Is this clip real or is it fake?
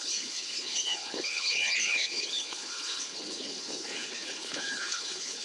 fake